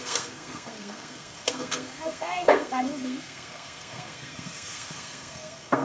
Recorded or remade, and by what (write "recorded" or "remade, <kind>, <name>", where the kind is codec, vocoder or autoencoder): remade, codec, SNAC